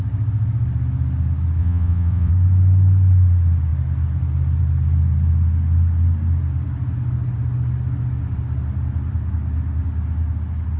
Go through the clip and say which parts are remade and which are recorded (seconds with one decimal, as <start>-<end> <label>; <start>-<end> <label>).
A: 0.0-1.6 recorded; 1.6-2.3 remade; 2.3-10.8 recorded

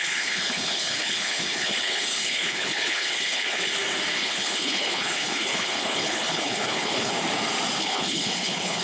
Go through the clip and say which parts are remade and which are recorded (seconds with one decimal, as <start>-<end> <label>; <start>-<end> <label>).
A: 0.0-3.7 remade; 3.7-4.2 recorded; 4.2-7.1 remade; 7.1-7.8 recorded; 7.8-8.8 remade

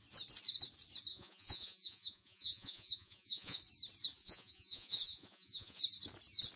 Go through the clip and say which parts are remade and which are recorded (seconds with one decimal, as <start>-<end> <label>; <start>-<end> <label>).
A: 0.0-1.1 recorded; 1.1-3.6 remade; 3.6-4.2 recorded; 4.2-5.8 remade; 5.8-6.6 recorded